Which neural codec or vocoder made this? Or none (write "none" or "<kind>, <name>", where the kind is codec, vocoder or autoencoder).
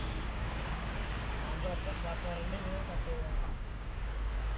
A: codec, DAC